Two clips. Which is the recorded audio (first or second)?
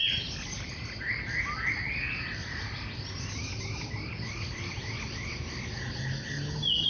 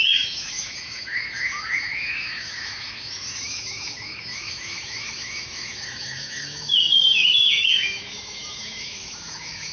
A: first